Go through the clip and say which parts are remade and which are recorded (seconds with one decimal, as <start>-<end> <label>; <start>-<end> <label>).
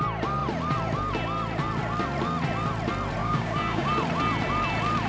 0.0-3.2 recorded; 3.2-3.9 remade; 3.9-5.1 recorded